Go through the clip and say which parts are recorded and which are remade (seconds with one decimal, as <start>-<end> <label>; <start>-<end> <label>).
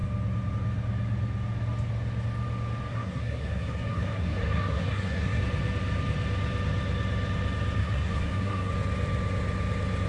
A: 0.0-2.9 recorded; 2.9-5.4 remade; 5.4-7.8 recorded; 7.8-8.7 remade; 8.7-10.1 recorded